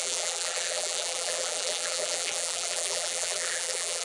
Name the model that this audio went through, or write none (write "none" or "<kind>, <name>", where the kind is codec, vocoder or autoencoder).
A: vocoder, BigVGAN v2